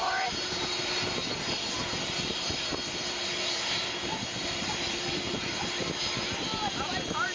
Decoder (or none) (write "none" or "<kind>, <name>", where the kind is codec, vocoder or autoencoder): none